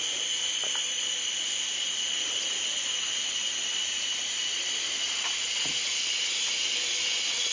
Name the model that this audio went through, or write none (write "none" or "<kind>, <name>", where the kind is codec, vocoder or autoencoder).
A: none